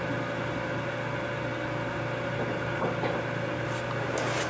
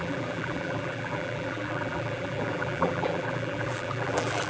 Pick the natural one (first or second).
first